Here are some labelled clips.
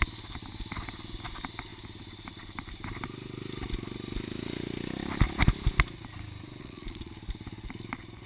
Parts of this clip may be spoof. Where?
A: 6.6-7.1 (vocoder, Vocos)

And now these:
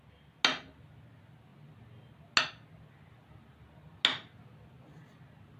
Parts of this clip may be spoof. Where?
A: none

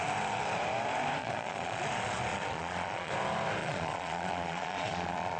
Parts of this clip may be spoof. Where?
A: 1.2-1.9 (vocoder, Vocos); 2.3-3.1; 3.6-5.4

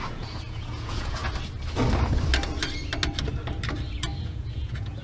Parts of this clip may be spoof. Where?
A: 0.0-1.2 (vocoder, Vocos); 4.2-5.0

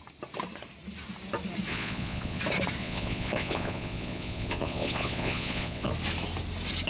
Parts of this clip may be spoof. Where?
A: 1.7-2.4 (vocoder, Vocos); 2.8-5.9